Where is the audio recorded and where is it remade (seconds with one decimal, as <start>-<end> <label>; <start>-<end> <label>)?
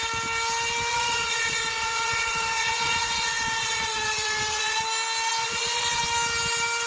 0.0-0.9 recorded; 0.9-4.8 remade; 4.8-5.4 recorded; 5.4-6.0 remade; 6.0-6.9 recorded